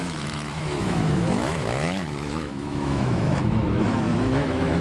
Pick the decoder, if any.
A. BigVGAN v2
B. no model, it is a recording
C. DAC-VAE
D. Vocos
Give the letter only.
C